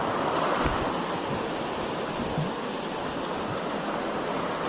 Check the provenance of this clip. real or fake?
real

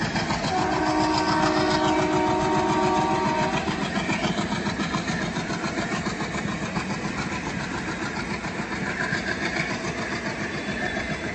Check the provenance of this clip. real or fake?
real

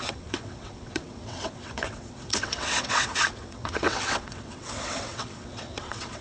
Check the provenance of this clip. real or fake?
fake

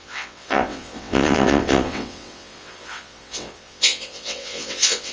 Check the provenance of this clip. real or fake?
fake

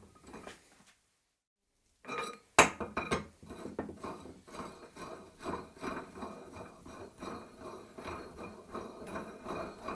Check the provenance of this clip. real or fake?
real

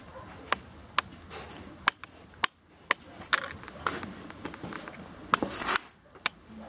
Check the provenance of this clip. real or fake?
real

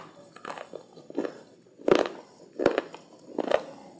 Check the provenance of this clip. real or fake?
real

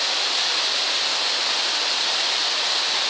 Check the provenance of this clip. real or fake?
real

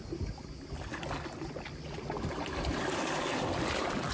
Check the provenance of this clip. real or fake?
real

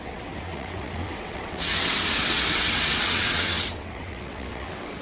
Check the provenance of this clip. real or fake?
fake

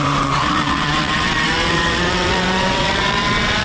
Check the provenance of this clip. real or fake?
fake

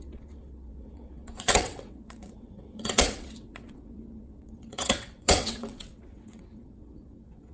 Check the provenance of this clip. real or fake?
fake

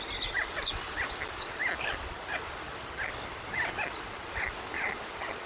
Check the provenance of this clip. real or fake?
real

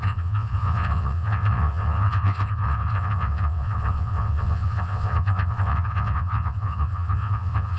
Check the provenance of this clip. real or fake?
fake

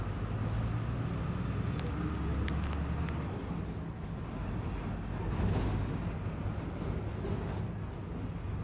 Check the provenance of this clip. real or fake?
real